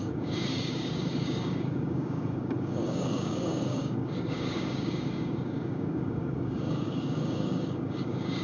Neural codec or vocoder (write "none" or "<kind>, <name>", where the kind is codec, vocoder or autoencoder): codec, DAC